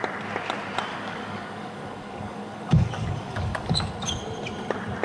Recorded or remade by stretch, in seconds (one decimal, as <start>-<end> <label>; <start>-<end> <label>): 0.0-0.9 recorded; 0.9-3.9 remade; 3.9-5.0 recorded